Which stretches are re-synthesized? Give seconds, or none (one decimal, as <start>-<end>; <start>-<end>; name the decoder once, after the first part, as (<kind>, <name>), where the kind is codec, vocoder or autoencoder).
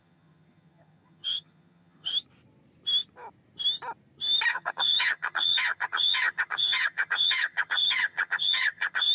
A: 0.0-2.1 (vocoder, HiFi-GAN); 4.5-9.1